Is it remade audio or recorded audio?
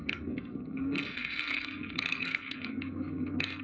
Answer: remade